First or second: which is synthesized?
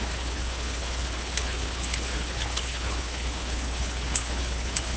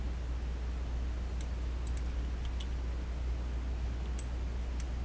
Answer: first